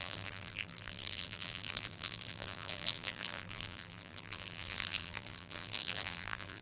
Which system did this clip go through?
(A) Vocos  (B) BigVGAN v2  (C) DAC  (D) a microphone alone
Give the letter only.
B